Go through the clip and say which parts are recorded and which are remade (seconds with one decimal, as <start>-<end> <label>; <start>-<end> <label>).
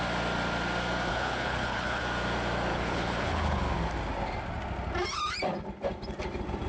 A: 0.0-1.1 recorded; 1.1-2.0 remade; 2.0-2.7 recorded; 2.7-3.6 remade; 3.6-6.7 recorded